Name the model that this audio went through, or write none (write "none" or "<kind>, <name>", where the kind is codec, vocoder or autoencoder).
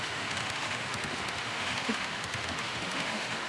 autoencoder, DAC-VAE